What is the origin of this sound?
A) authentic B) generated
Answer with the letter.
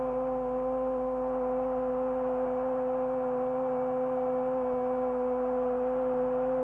A